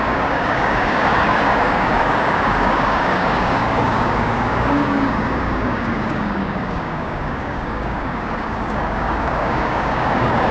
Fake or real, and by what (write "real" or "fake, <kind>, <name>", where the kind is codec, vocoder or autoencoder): fake, codec, DAC